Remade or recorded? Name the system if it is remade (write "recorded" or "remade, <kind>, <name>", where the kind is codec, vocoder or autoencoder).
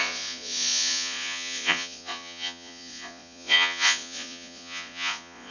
remade, vocoder, Vocos